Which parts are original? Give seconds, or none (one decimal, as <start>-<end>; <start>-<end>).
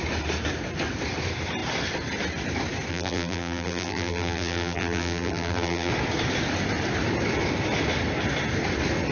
0.0-2.9; 5.9-9.1